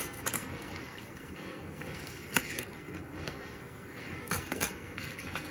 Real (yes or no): no